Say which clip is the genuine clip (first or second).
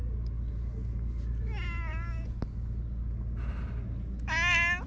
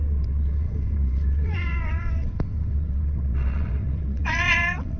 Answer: first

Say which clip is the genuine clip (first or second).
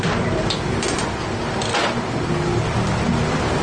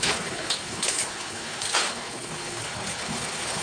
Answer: first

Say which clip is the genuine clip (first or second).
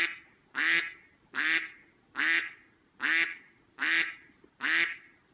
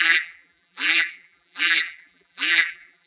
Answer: first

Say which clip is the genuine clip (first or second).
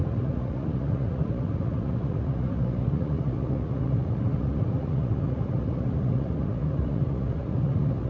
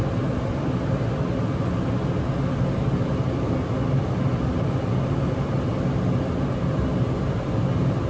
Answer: second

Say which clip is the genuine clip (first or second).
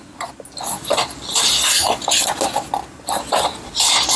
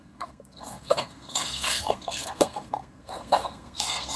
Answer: first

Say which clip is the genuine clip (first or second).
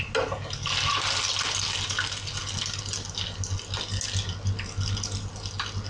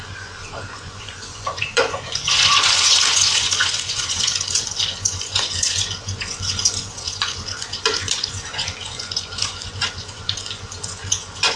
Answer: first